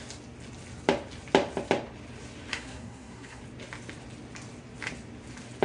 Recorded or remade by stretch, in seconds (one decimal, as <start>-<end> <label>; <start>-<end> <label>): 0.0-2.5 recorded; 2.5-3.4 remade; 3.4-5.6 recorded